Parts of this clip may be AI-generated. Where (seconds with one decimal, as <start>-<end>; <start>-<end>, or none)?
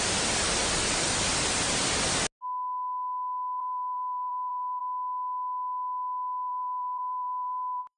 3.6-4.8; 6.5-8.0